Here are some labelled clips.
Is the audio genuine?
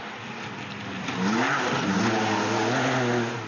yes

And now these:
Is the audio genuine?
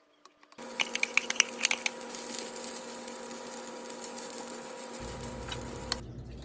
yes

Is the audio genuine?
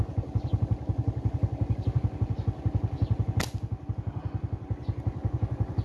yes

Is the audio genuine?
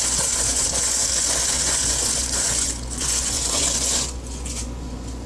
no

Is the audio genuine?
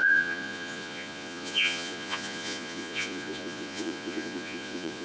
no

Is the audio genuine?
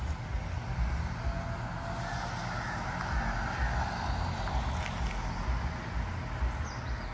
yes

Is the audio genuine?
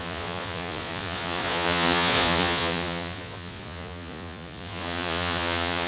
no